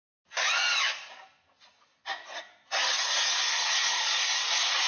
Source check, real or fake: real